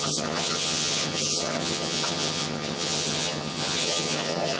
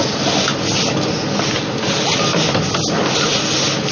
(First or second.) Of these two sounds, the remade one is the first